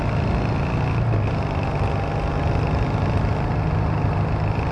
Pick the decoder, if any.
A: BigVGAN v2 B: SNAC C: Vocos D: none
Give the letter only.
D